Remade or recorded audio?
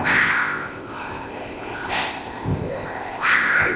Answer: remade